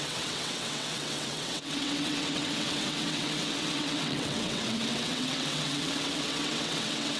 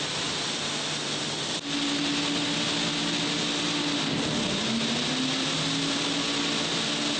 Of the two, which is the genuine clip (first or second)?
second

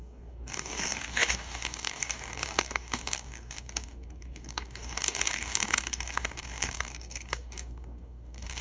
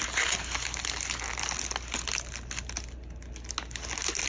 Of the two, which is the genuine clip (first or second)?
second